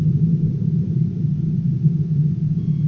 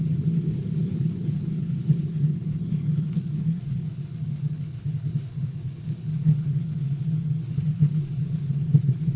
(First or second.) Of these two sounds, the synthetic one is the second